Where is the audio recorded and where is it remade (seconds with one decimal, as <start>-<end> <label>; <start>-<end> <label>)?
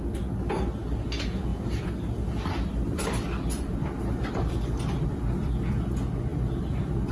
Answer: 0.0-1.5 recorded; 1.5-5.8 remade; 5.8-6.3 recorded; 6.3-7.1 remade